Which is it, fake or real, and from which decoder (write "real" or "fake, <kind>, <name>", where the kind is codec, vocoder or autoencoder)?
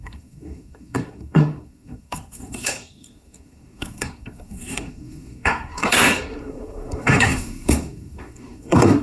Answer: fake, codec, SNAC